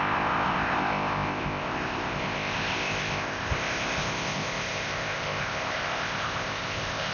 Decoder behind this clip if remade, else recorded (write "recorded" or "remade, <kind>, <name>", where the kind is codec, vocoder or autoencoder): remade, codec, ZipCodec